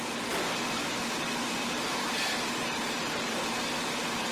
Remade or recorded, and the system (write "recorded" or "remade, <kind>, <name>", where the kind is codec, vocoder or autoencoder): recorded